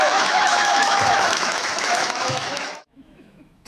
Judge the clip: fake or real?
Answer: fake